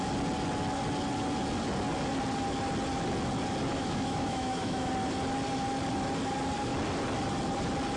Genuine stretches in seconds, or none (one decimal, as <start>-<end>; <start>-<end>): 0.0-3.7; 4.9-8.0